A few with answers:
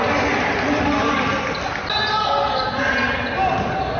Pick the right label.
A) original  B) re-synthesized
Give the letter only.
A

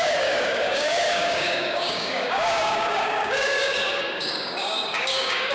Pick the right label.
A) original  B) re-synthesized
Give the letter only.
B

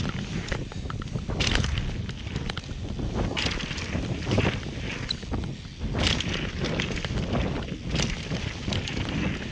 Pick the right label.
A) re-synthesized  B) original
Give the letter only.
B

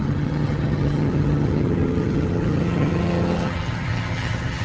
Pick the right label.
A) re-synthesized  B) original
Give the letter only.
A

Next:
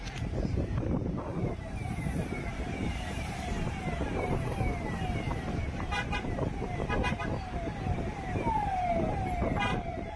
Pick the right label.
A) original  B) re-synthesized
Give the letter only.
B